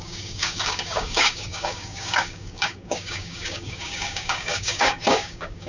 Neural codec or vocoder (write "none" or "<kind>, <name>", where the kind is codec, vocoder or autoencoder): codec, DAC